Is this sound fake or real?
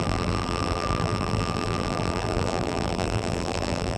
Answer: fake